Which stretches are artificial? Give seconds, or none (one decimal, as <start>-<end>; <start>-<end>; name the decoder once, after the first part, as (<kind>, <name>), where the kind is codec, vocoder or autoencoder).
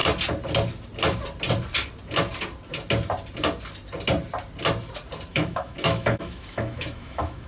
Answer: 5.3-7.5 (autoencoder, DAC-VAE)